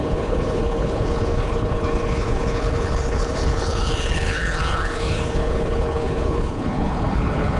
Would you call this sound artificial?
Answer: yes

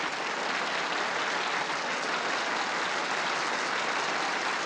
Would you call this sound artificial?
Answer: no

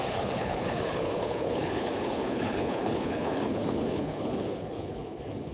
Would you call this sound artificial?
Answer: yes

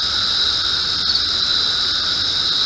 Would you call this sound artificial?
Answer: no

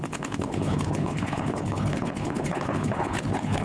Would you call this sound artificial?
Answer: yes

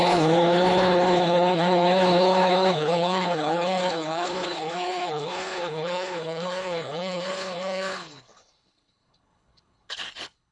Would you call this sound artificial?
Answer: yes